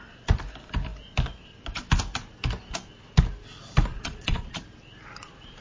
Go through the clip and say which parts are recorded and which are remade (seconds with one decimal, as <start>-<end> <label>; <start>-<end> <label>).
0.0-3.9 recorded; 3.9-4.6 remade; 4.6-5.6 recorded